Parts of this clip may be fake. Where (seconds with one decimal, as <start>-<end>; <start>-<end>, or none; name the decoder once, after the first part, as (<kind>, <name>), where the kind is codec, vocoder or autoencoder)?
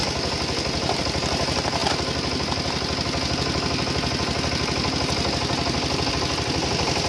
none